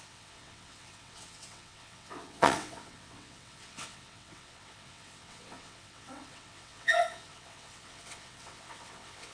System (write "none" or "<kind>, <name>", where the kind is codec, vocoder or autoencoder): vocoder, WaveNeXt